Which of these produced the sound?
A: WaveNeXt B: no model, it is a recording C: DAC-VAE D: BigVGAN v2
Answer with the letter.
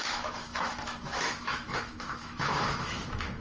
C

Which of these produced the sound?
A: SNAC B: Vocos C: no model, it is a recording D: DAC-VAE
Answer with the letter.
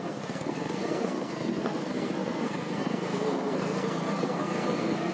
A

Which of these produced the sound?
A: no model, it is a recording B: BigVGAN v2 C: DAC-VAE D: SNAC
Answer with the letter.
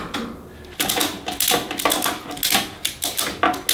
A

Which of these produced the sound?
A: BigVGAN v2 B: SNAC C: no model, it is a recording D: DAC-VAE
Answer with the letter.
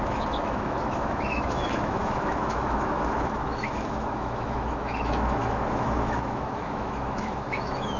D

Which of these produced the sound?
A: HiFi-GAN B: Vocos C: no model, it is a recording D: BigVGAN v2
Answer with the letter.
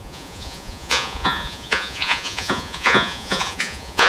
B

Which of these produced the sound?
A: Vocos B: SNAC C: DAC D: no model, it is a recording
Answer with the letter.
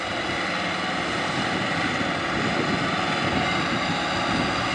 D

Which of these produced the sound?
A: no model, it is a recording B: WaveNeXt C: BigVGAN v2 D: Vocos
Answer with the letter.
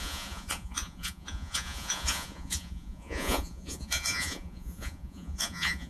D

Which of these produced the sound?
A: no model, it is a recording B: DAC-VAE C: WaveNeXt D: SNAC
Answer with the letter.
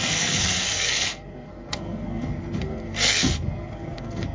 D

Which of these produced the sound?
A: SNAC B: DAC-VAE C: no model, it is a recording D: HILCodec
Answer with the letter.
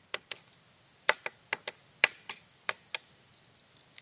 C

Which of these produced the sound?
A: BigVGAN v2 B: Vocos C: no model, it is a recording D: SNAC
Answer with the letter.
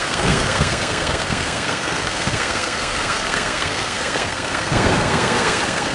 D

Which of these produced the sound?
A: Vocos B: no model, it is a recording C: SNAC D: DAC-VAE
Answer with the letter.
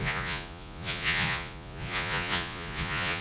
A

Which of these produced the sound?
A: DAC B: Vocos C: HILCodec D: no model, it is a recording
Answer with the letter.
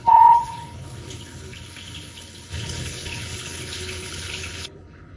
C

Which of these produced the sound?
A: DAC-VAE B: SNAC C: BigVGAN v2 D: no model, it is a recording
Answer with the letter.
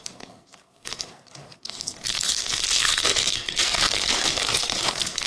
B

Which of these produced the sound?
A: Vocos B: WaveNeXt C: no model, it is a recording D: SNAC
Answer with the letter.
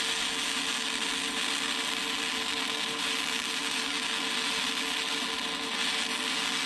C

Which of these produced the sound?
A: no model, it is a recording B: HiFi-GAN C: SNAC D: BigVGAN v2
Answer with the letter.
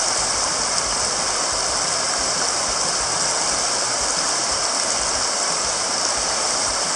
A